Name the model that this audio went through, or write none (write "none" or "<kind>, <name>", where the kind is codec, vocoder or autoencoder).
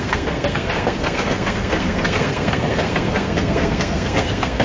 codec, SNAC